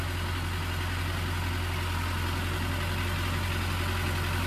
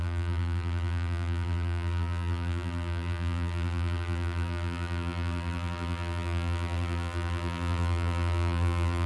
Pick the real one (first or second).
first